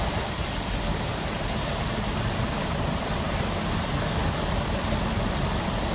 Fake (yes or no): yes